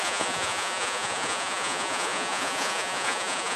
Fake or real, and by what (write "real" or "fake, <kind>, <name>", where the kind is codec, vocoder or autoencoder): fake, vocoder, Vocos